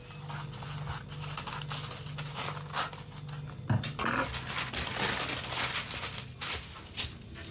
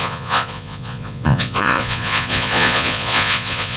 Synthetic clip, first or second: second